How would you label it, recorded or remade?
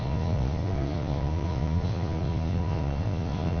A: remade